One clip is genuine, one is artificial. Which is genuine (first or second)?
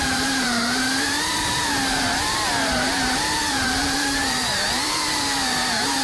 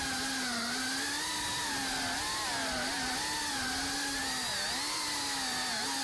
second